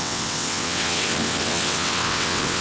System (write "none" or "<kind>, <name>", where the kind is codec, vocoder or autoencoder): vocoder, WaveNeXt